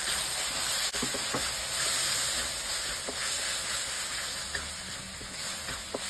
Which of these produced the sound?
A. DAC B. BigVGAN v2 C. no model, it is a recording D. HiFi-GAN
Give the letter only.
C